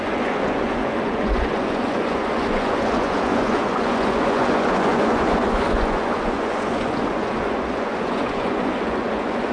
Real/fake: fake